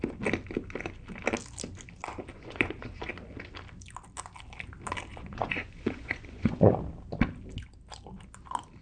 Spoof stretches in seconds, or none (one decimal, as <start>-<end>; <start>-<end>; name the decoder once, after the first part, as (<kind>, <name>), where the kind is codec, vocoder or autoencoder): 2.3-3.1 (vocoder, Vocos); 5.1-6.8